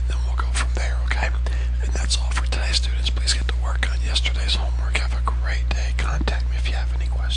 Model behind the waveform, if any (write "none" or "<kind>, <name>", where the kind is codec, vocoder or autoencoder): none